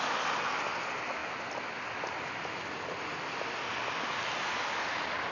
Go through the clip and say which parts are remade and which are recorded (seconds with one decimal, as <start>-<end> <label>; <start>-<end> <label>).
0.0-5.3 recorded